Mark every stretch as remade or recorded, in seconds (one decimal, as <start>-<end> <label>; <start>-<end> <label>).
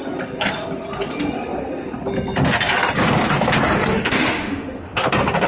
0.0-3.9 recorded; 3.9-5.1 remade; 5.1-5.5 recorded